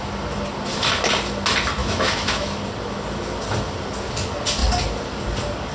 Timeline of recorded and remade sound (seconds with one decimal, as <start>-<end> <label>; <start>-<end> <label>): 0.0-1.8 recorded; 1.8-2.6 remade; 2.6-5.7 recorded